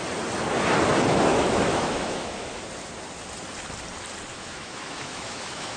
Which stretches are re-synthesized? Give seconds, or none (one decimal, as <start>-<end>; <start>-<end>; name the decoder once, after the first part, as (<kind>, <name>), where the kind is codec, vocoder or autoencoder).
1.3-2.6 (autoencoder, DAC-VAE); 4.3-5.8